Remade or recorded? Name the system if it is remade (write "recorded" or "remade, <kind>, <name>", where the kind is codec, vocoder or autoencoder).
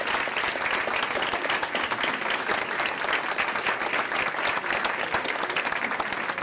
recorded